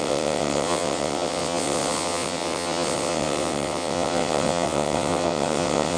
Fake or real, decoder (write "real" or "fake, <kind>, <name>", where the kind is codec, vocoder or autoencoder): fake, vocoder, WaveNeXt